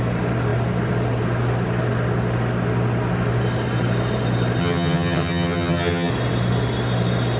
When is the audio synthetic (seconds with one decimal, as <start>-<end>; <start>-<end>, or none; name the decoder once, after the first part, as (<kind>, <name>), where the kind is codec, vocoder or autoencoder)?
4.6-6.1 (vocoder, HiFi-GAN)